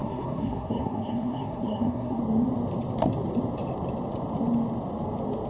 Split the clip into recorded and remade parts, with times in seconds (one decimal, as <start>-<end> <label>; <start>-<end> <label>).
0.0-2.2 remade; 2.2-5.5 recorded